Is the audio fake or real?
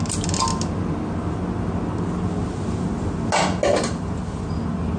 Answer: real